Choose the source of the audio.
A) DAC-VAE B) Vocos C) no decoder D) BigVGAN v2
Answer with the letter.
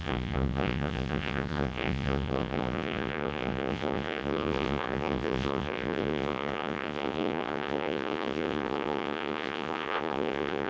B